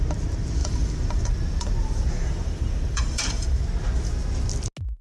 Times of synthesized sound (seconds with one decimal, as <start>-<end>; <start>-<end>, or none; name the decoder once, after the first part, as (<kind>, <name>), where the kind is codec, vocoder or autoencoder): 0.6-3.6 (vocoder, BigVGAN v2)